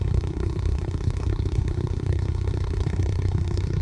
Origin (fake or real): fake